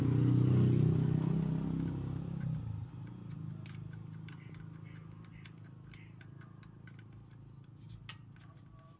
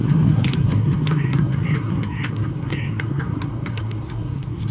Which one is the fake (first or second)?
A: second